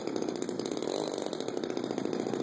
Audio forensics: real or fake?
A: real